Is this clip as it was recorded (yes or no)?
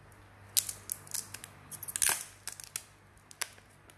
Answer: yes